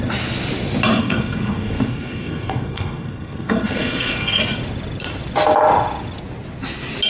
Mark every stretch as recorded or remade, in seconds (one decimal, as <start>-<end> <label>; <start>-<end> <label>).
0.0-1.0 recorded; 1.0-4.4 remade; 4.4-7.1 recorded